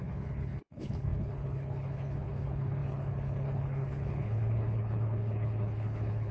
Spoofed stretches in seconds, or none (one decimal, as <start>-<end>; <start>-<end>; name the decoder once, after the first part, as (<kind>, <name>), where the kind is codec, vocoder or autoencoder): 0.0-6.3 (codec, HILCodec)